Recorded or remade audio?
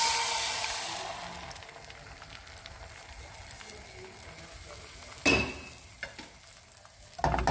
recorded